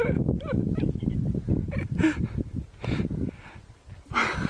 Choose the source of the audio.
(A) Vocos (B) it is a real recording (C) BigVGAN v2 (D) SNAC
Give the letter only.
B